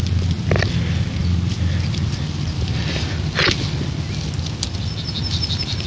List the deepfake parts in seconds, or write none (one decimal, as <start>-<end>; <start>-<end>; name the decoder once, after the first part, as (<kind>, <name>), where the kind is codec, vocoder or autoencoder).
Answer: none